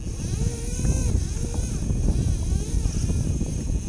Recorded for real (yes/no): yes